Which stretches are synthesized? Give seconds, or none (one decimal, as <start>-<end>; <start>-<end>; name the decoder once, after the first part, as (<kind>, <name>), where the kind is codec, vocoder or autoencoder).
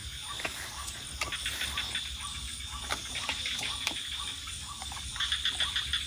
0.0-0.9 (codec, DAC); 2.3-5.3